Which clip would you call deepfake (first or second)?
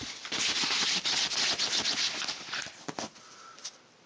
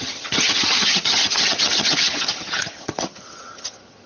second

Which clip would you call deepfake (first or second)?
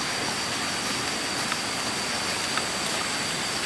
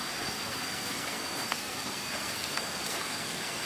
second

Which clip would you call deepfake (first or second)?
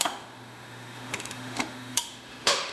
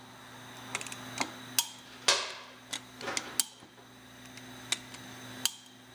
first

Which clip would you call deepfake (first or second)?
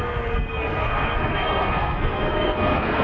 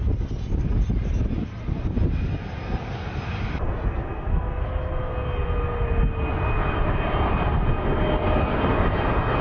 first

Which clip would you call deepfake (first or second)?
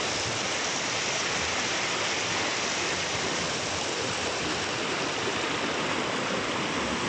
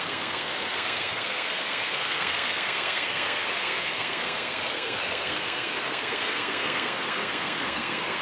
second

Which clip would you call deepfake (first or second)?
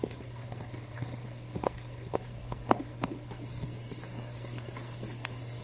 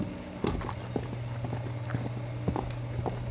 first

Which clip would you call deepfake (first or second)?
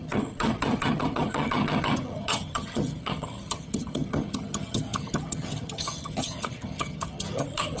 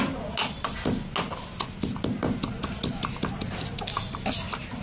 first